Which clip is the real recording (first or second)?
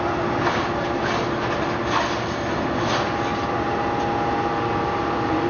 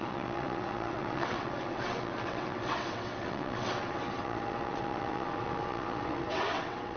first